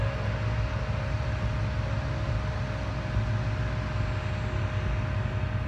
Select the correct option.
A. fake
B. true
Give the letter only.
B